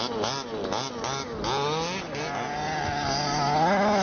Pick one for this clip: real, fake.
real